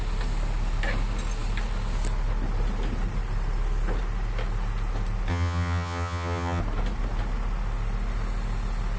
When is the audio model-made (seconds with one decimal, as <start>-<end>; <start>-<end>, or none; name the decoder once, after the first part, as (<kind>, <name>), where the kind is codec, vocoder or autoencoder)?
5.3-6.6 (vocoder, HiFi-GAN)